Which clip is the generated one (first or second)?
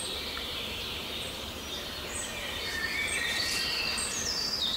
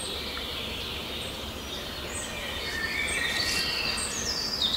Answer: first